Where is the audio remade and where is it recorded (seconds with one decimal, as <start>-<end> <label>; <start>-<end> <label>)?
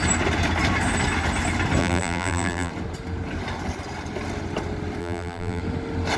0.0-1.8 recorded; 1.8-2.7 remade; 2.7-5.0 recorded; 5.0-5.6 remade; 5.6-6.2 recorded